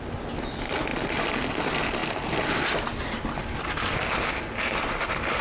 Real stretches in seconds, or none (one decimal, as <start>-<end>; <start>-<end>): 0.0-5.4